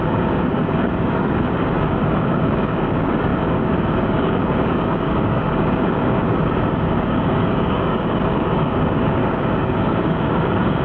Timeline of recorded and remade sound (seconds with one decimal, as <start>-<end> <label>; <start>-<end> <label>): 0.0-10.8 remade

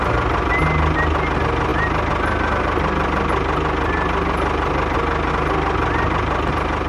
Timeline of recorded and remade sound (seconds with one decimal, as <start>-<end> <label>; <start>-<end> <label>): 0.0-6.9 recorded

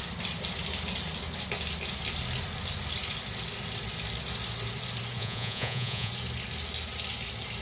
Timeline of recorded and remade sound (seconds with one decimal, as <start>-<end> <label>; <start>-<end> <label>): 0.0-5.2 recorded; 5.2-6.1 remade; 6.1-7.6 recorded

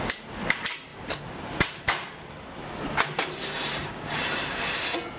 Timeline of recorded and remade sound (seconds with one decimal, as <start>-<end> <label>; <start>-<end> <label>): 0.0-0.9 recorded; 0.9-2.3 remade; 2.3-3.8 recorded; 3.8-4.8 remade; 4.8-5.2 recorded

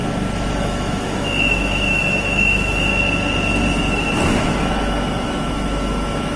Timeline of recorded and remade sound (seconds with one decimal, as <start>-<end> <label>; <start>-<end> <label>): 0.0-0.6 recorded; 0.6-2.9 remade; 2.9-4.3 recorded; 4.3-6.4 remade